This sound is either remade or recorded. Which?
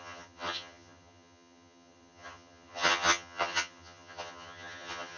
remade